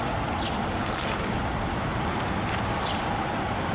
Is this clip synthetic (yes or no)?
no